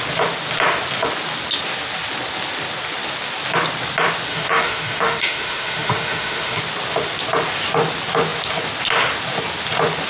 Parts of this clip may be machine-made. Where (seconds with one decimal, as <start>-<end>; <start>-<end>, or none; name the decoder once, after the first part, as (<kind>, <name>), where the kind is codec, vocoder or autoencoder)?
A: 4.3-6.6 (autoencoder, DAC-VAE)